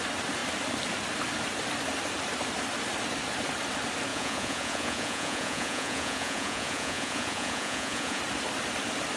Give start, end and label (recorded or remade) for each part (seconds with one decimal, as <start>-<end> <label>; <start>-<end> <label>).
0.0-4.1 recorded; 4.1-8.2 remade; 8.2-9.2 recorded